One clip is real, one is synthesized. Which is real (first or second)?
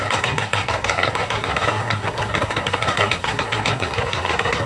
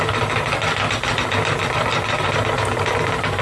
second